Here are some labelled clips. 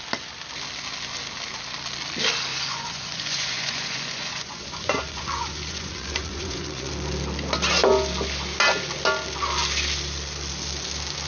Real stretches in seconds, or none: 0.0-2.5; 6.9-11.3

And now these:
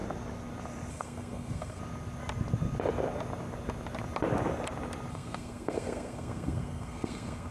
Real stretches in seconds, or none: 0.0-0.9; 1.8-5.1